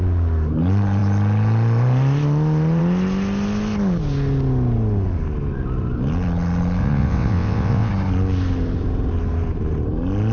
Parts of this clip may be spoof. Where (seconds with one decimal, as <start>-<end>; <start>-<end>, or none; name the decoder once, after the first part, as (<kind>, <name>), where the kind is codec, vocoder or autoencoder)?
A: 6.8-7.9 (vocoder, WaveNeXt)